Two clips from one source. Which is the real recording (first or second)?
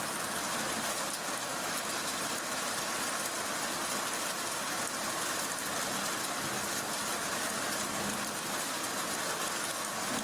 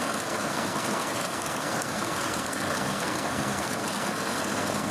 first